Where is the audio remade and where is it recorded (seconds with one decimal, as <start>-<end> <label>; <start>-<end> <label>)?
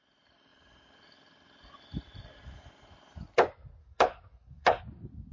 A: 0.0-3.8 recorded; 3.8-4.8 remade; 4.8-5.3 recorded